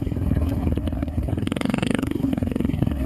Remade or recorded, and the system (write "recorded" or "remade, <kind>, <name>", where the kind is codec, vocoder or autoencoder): remade, codec, SNAC